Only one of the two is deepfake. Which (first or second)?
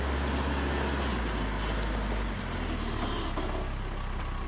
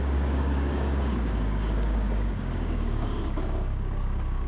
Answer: second